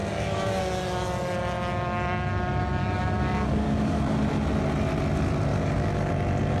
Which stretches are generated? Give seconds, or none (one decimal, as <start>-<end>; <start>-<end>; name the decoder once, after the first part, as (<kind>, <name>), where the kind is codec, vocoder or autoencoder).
0.0-0.6 (codec, DAC); 2.8-4.2; 5.5-6.1